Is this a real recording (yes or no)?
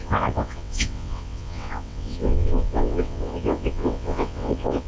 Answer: no